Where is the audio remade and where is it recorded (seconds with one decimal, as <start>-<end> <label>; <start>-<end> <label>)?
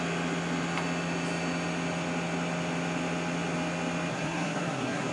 0.0-4.1 recorded; 4.1-5.1 remade